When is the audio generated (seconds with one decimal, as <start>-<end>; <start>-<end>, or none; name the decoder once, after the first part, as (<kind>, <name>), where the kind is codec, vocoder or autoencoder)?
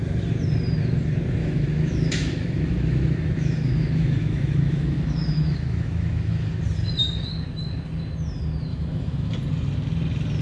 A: 1.4-6.6 (autoencoder, DAC-VAE); 8.7-9.3